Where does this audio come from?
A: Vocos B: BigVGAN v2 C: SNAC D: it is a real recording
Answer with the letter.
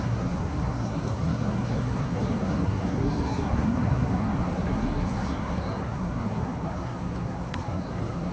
C